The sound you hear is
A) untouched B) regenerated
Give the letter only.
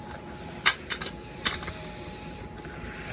A